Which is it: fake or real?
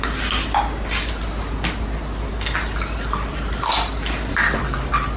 real